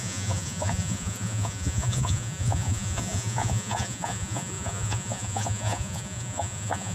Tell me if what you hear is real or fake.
fake